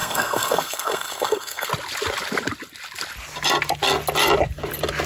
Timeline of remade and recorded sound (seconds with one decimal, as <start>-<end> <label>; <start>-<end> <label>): 0.0-1.7 remade; 1.7-5.1 recorded